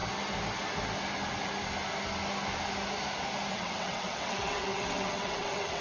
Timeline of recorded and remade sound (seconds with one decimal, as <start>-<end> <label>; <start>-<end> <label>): 0.0-3.5 recorded; 3.5-5.8 remade